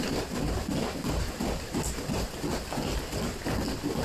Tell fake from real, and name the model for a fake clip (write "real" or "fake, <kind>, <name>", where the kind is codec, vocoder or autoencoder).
real